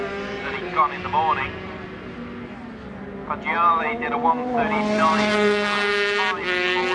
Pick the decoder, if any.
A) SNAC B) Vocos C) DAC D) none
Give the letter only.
D